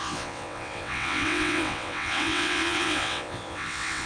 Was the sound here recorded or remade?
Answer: remade